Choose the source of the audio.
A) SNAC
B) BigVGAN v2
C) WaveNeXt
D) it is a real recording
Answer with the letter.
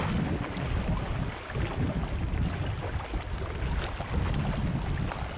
D